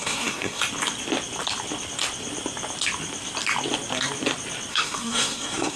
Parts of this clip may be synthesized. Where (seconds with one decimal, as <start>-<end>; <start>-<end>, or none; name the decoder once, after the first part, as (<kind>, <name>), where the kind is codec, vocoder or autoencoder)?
0.0-0.6 (codec, SNAC); 4.7-5.8